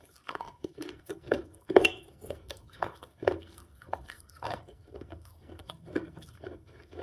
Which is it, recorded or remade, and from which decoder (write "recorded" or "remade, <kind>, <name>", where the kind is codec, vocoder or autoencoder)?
remade, codec, SNAC